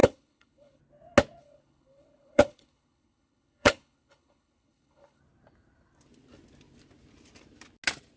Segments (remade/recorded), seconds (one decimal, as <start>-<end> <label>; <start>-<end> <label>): 0.0-0.8 remade; 0.8-1.4 recorded; 1.4-5.2 remade; 5.2-8.2 recorded